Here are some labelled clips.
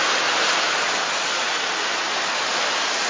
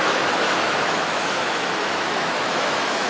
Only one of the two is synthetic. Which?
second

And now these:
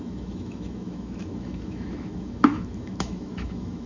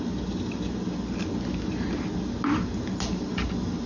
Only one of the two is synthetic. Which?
first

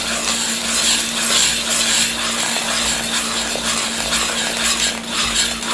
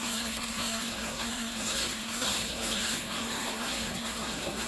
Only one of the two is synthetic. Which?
second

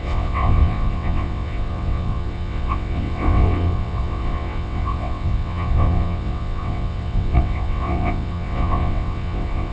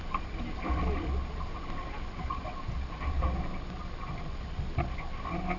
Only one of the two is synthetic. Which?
first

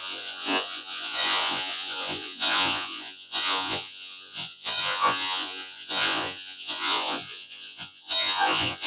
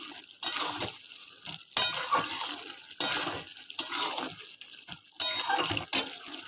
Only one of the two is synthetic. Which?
first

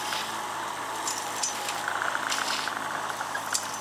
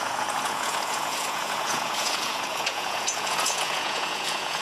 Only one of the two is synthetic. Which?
second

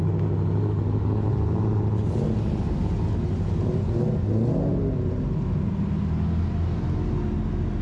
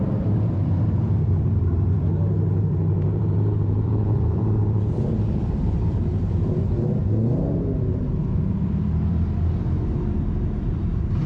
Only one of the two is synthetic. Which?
second